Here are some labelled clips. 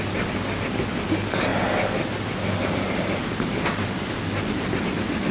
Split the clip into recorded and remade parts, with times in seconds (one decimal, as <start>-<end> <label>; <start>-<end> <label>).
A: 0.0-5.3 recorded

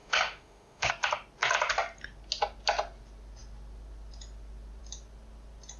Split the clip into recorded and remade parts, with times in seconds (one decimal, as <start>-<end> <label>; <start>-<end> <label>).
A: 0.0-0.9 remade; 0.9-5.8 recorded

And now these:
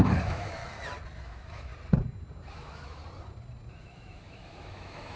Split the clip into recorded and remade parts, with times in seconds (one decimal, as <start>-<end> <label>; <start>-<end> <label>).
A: 0.0-0.6 remade; 0.6-1.2 recorded; 1.2-1.7 remade; 1.7-2.5 recorded; 2.5-3.0 remade; 3.0-3.8 recorded; 3.8-5.2 remade

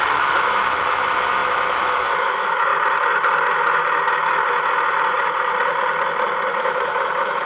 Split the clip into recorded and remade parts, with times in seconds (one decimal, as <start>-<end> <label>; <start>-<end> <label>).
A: 0.0-2.7 remade; 2.7-6.5 recorded; 6.5-7.5 remade

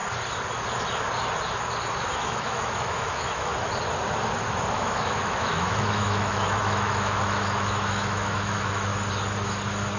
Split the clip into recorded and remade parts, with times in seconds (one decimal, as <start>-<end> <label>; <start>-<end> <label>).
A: 0.0-2.2 recorded; 2.2-3.5 remade; 3.5-4.7 recorded; 4.7-8.9 remade; 8.9-10.0 recorded

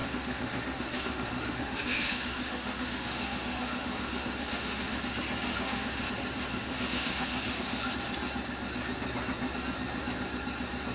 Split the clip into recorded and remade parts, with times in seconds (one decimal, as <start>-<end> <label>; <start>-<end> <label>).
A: 0.0-5.0 remade; 5.0-5.5 recorded; 5.5-6.1 remade; 6.1-6.5 recorded; 6.5-7.9 remade; 7.9-10.9 recorded